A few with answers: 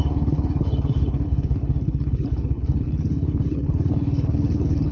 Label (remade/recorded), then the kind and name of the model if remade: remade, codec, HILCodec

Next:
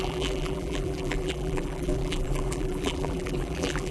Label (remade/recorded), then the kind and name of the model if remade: remade, vocoder, BigVGAN v2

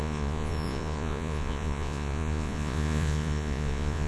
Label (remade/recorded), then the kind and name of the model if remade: remade, vocoder, Vocos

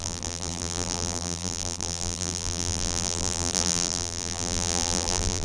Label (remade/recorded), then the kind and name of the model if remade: remade, vocoder, BigVGAN v2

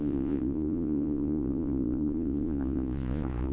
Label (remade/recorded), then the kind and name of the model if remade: remade, vocoder, Vocos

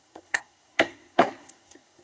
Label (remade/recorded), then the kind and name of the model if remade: remade, codec, SNAC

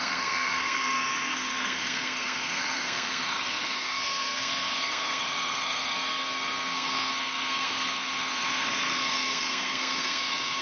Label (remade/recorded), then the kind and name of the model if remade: remade, codec, SNAC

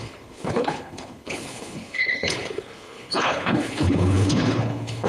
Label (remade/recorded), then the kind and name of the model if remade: remade, codec, HILCodec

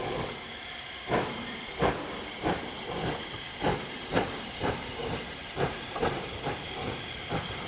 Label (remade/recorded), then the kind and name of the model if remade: remade, vocoder, BigVGAN v2